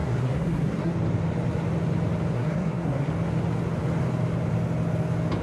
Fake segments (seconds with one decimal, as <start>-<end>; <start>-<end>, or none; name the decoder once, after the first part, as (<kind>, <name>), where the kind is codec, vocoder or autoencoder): 0.0-0.9 (codec, SNAC); 2.3-3.1